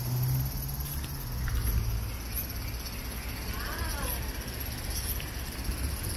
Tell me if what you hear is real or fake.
real